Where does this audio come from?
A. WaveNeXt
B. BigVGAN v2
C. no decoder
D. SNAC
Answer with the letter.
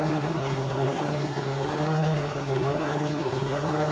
D